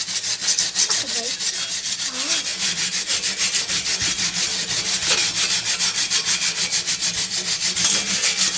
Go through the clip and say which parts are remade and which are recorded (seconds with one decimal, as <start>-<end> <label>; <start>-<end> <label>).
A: 0.0-8.6 recorded